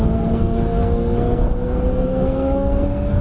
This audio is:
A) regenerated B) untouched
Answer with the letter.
A